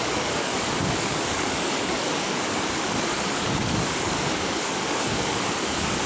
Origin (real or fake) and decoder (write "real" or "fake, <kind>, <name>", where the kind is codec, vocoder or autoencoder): fake, codec, DAC